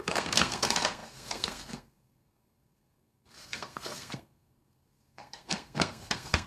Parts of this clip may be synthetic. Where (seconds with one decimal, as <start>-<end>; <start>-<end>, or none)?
0.0-6.5

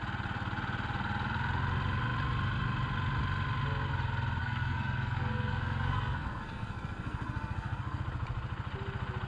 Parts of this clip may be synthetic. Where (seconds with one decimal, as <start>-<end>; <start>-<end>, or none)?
4.4-8.0

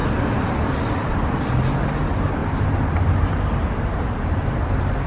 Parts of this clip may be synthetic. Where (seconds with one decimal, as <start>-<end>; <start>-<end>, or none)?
none

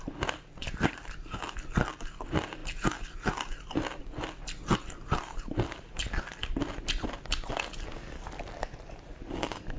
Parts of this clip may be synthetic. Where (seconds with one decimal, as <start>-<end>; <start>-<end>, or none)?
none